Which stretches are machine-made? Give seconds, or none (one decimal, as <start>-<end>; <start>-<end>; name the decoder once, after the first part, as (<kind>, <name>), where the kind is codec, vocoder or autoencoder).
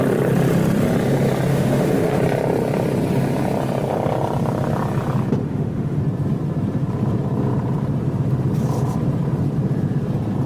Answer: 1.5-2.2 (autoencoder, DAC-VAE); 5.4-6.0